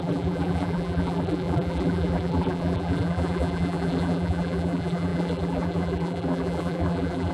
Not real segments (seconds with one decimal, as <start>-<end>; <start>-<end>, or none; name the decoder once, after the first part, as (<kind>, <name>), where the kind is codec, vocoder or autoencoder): 0.0-7.3 (vocoder, BigVGAN v2)